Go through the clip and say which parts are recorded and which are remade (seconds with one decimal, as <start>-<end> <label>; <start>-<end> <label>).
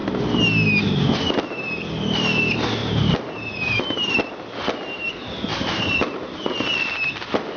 0.0-2.8 recorded; 2.8-3.8 remade; 3.8-5.5 recorded; 5.5-6.7 remade; 6.7-7.6 recorded